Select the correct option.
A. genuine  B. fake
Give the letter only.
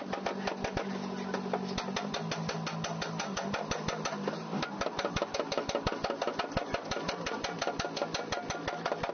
A